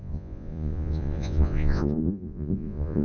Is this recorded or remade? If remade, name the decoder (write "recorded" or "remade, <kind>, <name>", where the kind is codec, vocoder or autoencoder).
remade, vocoder, Vocos